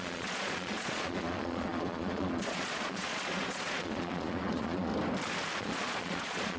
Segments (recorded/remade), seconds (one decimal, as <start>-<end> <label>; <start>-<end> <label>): 0.0-4.9 remade; 4.9-5.6 recorded; 5.6-6.6 remade